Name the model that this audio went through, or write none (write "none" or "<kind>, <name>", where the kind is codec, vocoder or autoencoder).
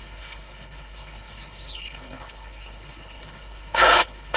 codec, HILCodec